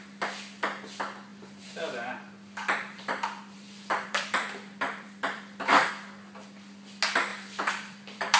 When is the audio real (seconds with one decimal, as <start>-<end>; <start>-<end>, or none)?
0.0-1.3; 5.9-7.3